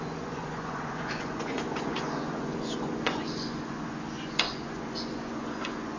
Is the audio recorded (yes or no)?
no